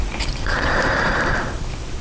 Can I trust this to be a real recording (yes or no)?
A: no